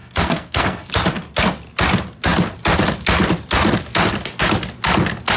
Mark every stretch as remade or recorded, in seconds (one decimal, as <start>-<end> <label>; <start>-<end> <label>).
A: 0.0-0.9 remade; 0.9-5.4 recorded